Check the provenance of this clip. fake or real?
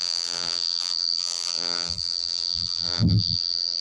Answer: fake